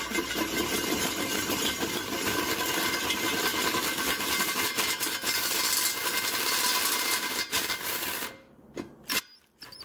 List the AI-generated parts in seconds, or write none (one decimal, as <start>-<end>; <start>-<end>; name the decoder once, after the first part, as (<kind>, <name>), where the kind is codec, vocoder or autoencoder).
none

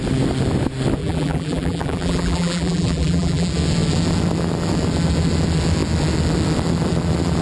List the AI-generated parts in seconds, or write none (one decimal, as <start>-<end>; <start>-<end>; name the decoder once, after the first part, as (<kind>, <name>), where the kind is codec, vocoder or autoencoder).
1.0-3.5 (vocoder, BigVGAN v2)

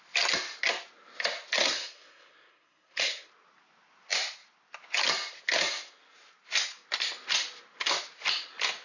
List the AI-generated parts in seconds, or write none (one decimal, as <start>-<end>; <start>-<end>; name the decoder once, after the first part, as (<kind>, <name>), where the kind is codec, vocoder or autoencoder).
1.6-3.3 (codec, SNAC)

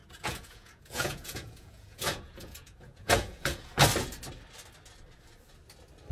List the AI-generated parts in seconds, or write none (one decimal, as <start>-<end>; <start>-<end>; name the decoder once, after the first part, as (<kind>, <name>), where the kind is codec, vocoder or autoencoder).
0.0-3.7 (vocoder, Vocos)

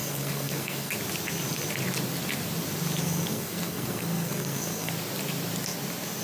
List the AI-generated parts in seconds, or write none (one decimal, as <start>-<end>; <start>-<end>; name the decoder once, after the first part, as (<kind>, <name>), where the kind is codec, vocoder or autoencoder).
0.0-0.9 (codec, SNAC); 3.0-4.9

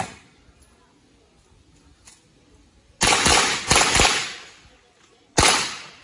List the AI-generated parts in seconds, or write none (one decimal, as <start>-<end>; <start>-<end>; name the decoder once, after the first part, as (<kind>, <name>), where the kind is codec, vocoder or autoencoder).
none

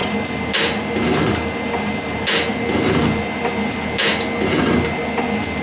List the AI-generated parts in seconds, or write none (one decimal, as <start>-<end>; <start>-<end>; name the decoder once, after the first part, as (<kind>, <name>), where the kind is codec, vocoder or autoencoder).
none

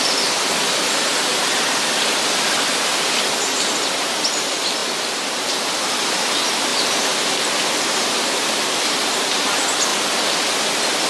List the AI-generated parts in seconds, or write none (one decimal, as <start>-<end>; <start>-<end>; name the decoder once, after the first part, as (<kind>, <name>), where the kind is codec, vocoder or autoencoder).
6.7-8.6 (vocoder, BigVGAN v2)